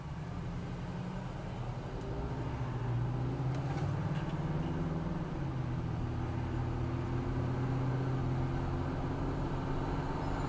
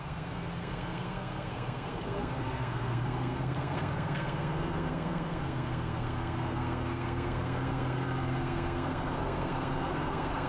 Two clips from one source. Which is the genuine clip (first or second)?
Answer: first